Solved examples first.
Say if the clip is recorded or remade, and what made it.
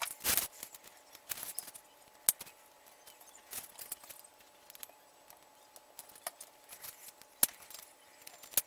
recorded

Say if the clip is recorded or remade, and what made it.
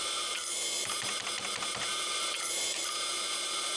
recorded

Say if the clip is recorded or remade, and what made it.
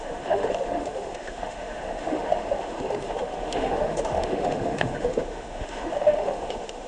remade, autoencoder, DAC-VAE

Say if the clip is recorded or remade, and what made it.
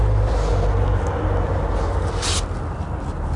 recorded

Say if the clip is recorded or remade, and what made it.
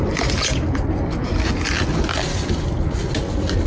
recorded